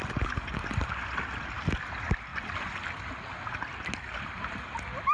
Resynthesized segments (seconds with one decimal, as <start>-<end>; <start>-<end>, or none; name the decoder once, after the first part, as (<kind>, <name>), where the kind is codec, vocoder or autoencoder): none

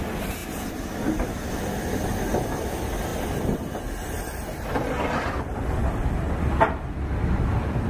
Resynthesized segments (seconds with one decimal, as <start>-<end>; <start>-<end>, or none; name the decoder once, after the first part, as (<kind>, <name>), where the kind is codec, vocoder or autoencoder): none